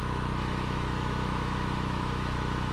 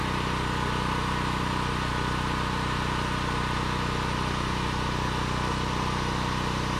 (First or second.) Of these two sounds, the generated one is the first